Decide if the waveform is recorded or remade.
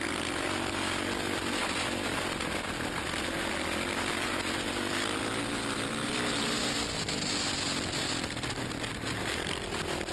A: recorded